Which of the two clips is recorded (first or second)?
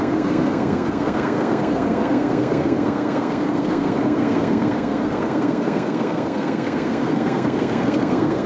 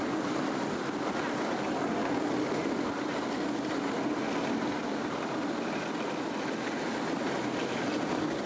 second